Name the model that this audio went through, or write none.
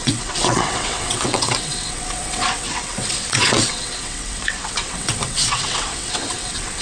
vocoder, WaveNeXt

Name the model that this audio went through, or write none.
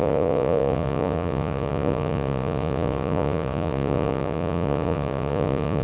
vocoder, Vocos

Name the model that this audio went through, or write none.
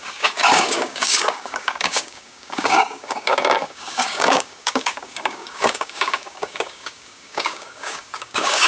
codec, DAC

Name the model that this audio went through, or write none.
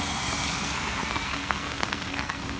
codec, SNAC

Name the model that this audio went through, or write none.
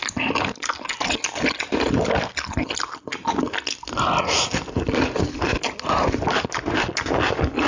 none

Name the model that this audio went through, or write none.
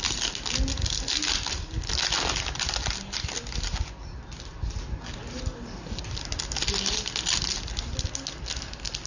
none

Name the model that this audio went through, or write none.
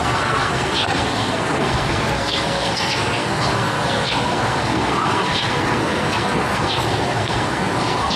codec, SNAC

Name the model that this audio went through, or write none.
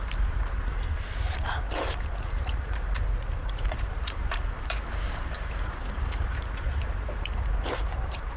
vocoder, BigVGAN v2